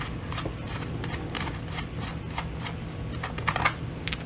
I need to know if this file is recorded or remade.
recorded